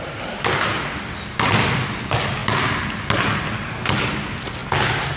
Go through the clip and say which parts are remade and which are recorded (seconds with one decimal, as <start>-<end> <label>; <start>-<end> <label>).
0.0-5.2 recorded